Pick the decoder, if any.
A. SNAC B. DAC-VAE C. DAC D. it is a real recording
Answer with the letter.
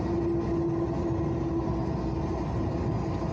D